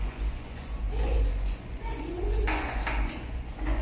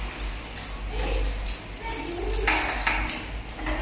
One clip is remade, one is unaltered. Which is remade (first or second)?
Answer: first